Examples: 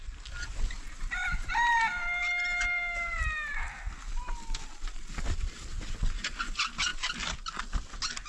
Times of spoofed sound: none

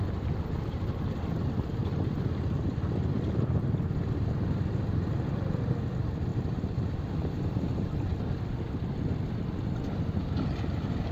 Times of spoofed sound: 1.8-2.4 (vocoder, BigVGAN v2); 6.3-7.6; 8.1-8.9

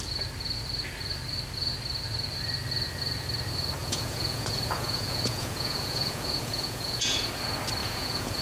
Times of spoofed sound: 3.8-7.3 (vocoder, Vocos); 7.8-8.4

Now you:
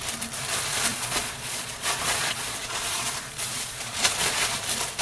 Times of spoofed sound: 0.9-3.1 (vocoder, Vocos); 3.5-4.5

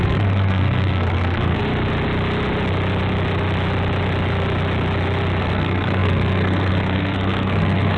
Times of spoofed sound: 0.0-1.6 (codec, SNAC); 5.4-8.0